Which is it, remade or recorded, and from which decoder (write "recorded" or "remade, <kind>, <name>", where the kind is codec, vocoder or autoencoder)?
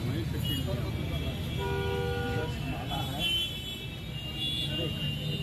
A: recorded